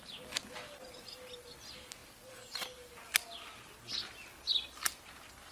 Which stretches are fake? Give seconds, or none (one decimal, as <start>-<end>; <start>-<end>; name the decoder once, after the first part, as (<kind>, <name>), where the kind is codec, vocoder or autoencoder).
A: none